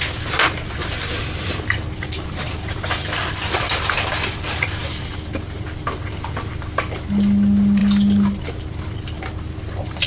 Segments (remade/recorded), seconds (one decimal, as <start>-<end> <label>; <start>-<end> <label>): 0.0-10.1 recorded